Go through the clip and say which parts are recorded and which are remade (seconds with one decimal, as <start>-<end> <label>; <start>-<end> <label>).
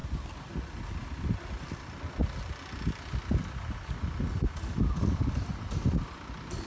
0.0-6.7 recorded